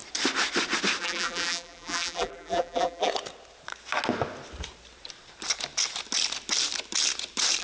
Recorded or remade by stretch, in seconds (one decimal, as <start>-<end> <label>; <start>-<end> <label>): 0.0-1.0 recorded; 1.0-3.1 remade; 3.1-7.6 recorded